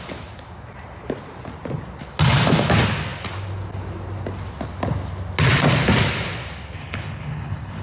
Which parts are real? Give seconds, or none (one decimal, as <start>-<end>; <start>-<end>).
0.0-6.8